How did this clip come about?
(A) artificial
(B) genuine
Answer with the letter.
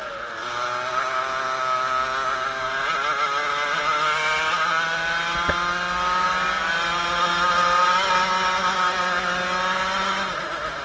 B